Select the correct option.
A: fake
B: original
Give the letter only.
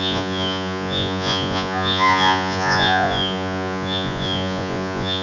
A